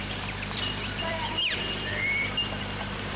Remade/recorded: remade